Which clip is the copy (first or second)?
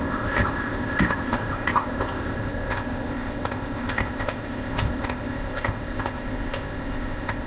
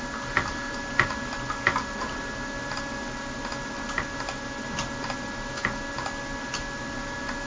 first